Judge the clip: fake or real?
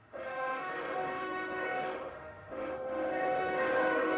fake